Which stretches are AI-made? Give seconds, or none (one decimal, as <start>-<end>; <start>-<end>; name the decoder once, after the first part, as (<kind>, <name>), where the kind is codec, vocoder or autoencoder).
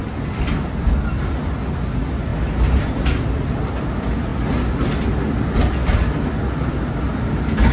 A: none